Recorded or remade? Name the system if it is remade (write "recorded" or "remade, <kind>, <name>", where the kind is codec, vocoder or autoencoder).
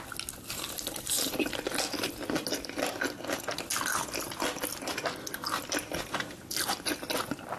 recorded